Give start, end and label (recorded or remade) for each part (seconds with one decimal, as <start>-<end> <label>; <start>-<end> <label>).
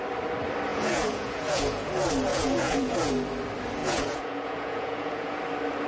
0.0-0.7 recorded; 0.7-1.9 remade; 1.9-2.3 recorded; 2.3-3.1 remade; 3.1-3.8 recorded; 3.8-5.4 remade; 5.4-5.9 recorded